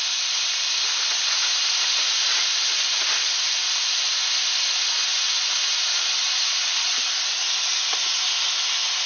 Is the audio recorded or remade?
recorded